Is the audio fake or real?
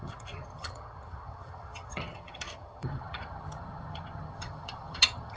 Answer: fake